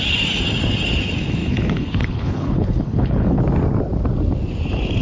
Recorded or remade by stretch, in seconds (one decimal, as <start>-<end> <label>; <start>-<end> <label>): 0.0-1.4 recorded; 1.4-3.4 remade; 3.4-5.0 recorded